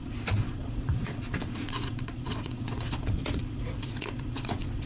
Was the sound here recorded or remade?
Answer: remade